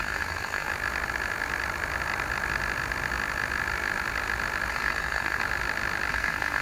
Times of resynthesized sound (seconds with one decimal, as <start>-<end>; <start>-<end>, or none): 0.0-0.7; 4.7-5.4; 6.1-6.6